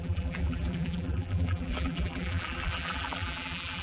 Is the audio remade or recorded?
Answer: remade